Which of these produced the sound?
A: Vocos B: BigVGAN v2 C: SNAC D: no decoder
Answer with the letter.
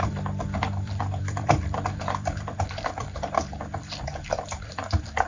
B